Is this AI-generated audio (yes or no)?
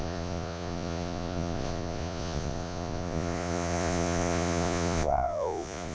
yes